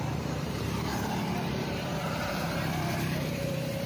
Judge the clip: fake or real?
fake